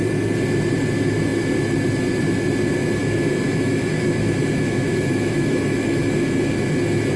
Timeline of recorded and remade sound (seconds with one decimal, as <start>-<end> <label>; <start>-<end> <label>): 0.0-3.0 recorded; 3.0-6.6 remade; 6.6-7.2 recorded